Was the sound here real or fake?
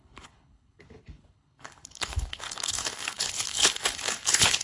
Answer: fake